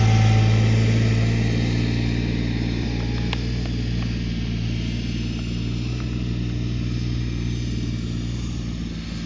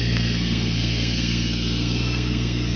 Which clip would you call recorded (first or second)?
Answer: first